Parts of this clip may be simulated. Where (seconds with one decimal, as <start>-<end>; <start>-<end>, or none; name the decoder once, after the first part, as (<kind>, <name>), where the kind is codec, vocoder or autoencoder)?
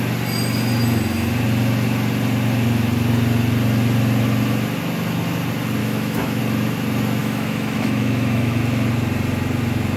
5.8-6.4 (autoencoder, DAC-VAE); 7.2-8.6